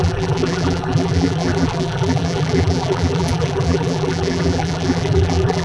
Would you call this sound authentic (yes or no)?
no